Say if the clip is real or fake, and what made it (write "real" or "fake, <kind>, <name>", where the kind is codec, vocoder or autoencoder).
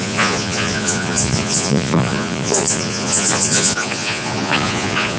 fake, vocoder, Vocos